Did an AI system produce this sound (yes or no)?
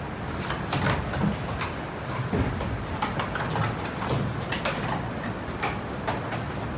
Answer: no